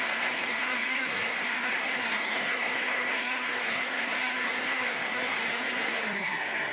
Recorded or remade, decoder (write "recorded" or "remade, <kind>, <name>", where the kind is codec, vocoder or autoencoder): remade, codec, SNAC